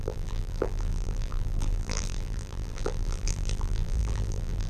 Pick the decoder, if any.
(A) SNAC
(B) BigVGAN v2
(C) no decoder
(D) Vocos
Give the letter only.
B